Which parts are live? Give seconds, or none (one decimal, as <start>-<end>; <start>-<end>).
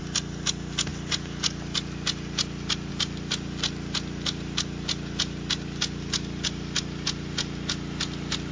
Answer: 0.0-8.5